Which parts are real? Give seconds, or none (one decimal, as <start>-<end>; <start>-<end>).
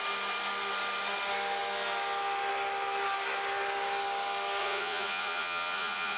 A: 0.0-4.6